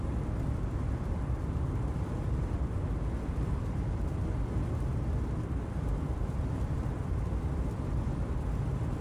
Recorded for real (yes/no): no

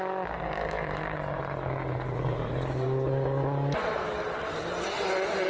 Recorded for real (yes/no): yes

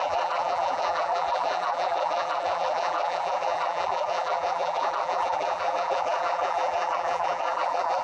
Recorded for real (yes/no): no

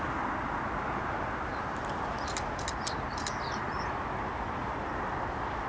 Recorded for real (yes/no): yes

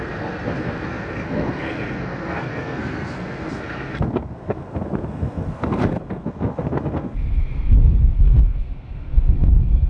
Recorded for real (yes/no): no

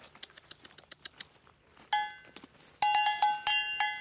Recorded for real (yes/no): yes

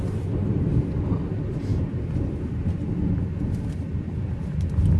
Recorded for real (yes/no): yes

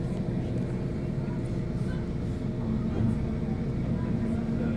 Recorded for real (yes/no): yes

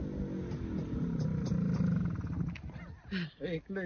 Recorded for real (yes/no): yes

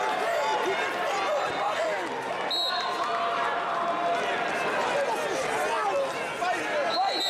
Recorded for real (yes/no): yes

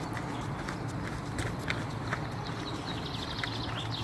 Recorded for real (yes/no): yes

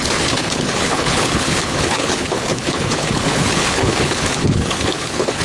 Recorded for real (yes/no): no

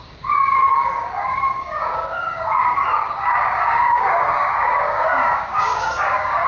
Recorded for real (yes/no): no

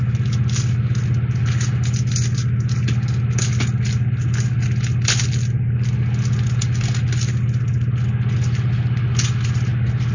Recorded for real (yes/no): yes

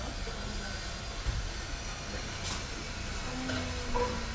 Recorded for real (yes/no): yes